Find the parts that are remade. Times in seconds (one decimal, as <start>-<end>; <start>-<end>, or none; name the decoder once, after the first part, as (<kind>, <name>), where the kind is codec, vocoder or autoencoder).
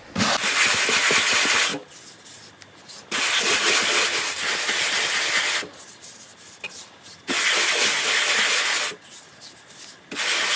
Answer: none